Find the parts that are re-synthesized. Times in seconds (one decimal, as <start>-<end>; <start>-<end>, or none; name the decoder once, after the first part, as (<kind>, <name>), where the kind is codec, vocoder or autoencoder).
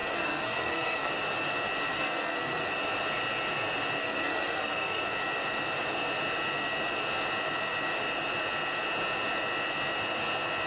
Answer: 0.0-1.1 (codec, SNAC); 1.9-2.7; 4.0-5.0